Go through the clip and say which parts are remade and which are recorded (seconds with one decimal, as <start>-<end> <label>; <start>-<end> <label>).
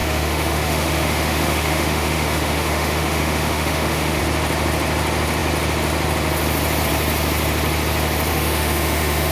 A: 0.0-4.2 remade; 4.2-8.3 recorded; 8.3-9.3 remade